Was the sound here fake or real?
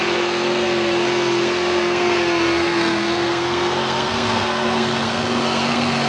fake